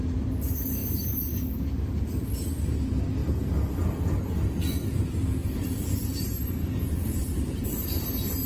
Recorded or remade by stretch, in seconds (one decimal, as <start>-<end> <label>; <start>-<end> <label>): 0.0-0.8 recorded; 0.8-1.4 remade; 1.4-3.2 recorded; 3.2-4.0 remade; 4.0-5.4 recorded; 5.4-7.7 remade; 7.7-8.5 recorded